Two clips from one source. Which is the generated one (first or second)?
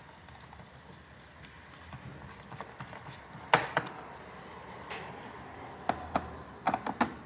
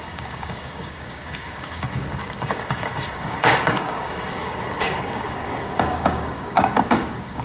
second